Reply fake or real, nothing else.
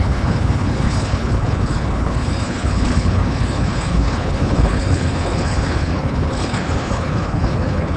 fake